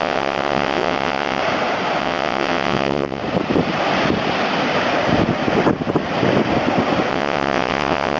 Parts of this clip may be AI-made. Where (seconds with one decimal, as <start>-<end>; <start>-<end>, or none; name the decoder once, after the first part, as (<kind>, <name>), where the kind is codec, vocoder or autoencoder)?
0.0-1.4 (vocoder, WaveNeXt); 2.0-3.2; 7.1-8.2